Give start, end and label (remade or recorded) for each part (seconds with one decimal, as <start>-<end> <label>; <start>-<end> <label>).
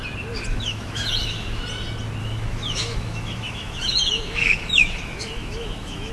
0.0-0.5 recorded; 0.5-1.6 remade; 1.6-2.2 recorded; 2.2-6.1 remade